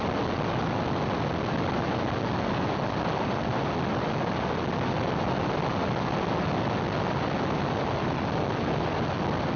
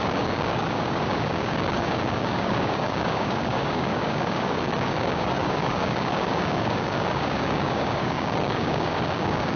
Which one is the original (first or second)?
first